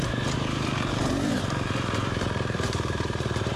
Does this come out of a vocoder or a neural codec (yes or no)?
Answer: yes